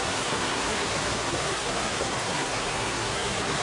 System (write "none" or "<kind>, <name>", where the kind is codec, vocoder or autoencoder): codec, SNAC